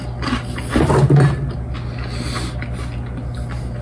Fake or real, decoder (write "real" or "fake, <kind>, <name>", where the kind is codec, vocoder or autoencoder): real